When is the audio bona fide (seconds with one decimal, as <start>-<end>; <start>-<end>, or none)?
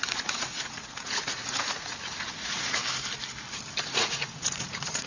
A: 2.8-4.0